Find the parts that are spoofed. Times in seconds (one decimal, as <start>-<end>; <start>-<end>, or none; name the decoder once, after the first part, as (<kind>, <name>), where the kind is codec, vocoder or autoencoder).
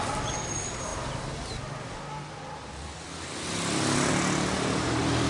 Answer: none